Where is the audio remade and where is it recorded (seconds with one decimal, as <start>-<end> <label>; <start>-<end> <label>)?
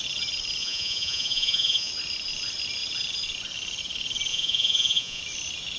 0.0-0.6 recorded; 0.6-1.9 remade; 1.9-4.3 recorded; 4.3-5.2 remade; 5.2-5.8 recorded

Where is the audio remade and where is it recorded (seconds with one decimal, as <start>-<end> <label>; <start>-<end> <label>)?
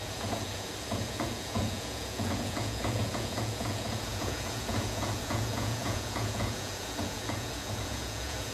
0.0-8.5 remade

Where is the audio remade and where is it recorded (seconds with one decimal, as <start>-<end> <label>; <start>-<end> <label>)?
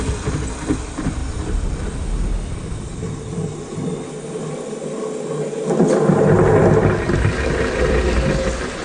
0.0-8.8 recorded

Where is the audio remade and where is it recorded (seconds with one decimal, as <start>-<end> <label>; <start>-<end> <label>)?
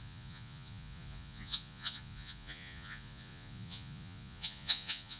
0.0-5.2 remade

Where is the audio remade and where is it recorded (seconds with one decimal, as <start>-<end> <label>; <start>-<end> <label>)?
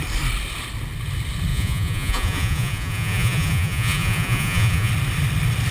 0.0-1.5 recorded; 1.5-4.9 remade; 4.9-5.7 recorded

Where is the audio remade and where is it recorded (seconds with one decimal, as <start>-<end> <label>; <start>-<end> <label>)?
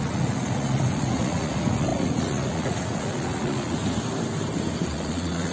0.0-3.8 remade; 3.8-4.9 recorded; 4.9-5.5 remade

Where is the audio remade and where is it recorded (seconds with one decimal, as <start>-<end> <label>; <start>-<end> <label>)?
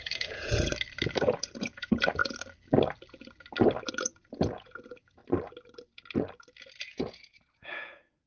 0.0-0.7 remade; 0.7-1.2 recorded; 1.2-2.2 remade; 2.2-3.9 recorded; 3.9-5.2 remade; 5.2-6.8 recorded; 6.8-8.3 remade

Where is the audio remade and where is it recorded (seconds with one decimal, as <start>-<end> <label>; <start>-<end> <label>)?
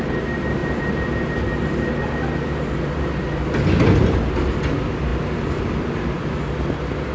0.0-7.1 recorded